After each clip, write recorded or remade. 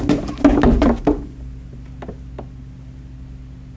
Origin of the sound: recorded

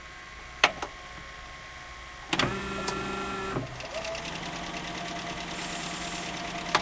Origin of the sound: recorded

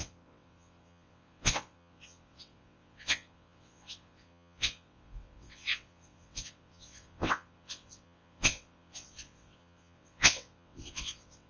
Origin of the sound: remade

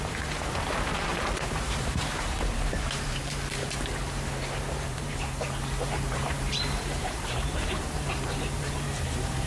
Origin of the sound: remade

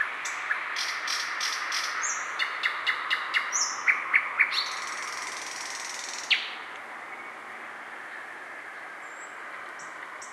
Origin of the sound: recorded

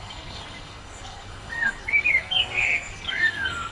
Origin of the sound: remade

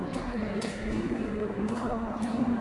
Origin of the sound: remade